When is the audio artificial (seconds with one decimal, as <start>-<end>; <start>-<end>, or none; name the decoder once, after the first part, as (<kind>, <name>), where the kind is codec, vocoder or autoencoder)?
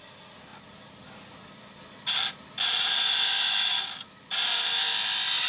none